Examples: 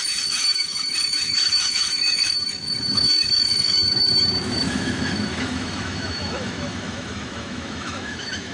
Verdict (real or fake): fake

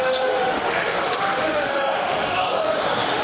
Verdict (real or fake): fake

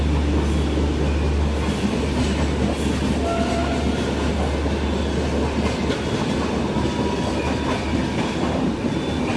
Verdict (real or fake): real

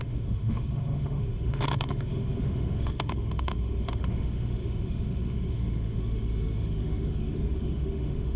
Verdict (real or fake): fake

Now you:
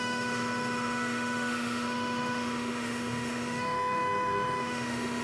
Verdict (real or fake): fake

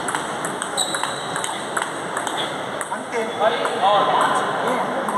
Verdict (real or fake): real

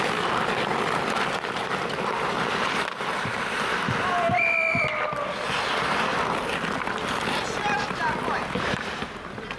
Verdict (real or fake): real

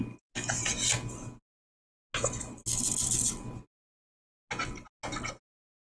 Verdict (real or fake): real